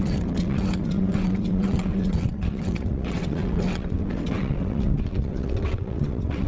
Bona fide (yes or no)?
no